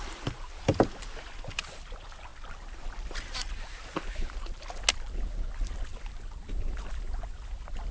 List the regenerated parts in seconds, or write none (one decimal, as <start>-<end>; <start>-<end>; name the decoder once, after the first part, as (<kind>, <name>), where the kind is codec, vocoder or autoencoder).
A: none